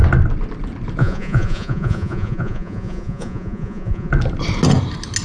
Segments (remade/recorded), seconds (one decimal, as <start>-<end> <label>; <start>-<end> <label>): 0.0-1.0 recorded; 1.0-4.1 remade; 4.1-5.2 recorded